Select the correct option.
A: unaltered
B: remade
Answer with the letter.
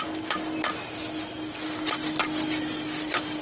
A